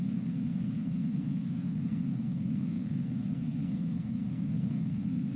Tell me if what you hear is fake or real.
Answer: fake